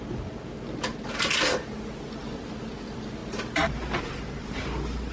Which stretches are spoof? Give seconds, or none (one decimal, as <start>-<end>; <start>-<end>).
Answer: none